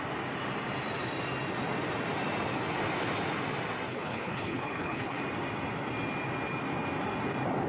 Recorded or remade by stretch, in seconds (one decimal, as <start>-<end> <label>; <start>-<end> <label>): 0.0-3.9 recorded; 3.9-5.2 remade; 5.2-7.7 recorded